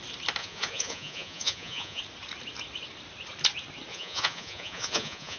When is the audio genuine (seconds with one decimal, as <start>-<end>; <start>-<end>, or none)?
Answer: 0.0-0.4; 2.0-3.9